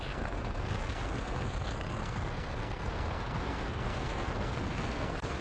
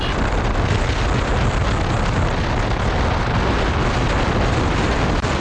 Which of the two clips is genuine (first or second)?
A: second